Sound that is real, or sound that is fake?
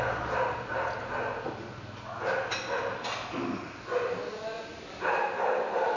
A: real